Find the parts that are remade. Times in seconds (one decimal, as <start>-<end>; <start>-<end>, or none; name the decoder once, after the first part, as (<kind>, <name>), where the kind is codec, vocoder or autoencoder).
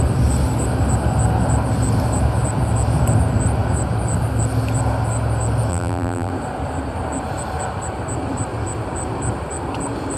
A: 5.7-6.3 (vocoder, BigVGAN v2)